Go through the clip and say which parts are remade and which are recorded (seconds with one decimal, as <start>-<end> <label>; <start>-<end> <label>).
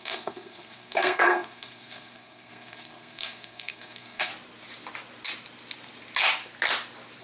0.0-4.3 remade; 4.3-7.2 recorded